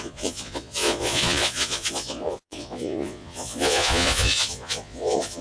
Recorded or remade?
remade